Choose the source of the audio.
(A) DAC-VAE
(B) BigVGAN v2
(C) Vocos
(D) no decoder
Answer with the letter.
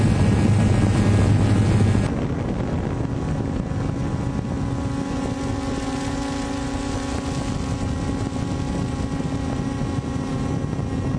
D